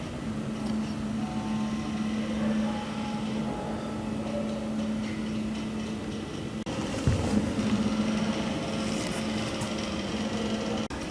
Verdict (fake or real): real